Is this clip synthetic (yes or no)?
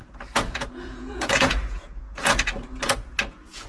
yes